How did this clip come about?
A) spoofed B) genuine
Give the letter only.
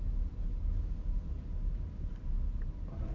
A